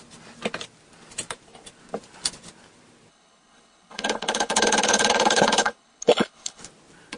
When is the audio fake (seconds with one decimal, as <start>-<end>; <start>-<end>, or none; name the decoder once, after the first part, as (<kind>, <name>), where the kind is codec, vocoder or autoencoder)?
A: 3.1-6.6 (codec, HILCodec)